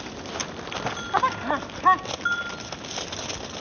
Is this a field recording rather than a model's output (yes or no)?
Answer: yes